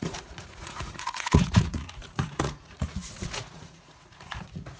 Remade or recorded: remade